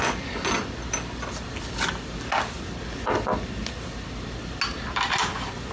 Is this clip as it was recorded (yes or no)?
yes